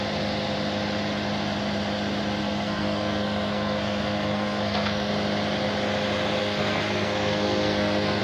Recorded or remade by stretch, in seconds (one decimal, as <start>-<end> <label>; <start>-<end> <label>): 0.0-2.4 recorded; 2.4-5.1 remade; 5.1-6.4 recorded; 6.4-8.2 remade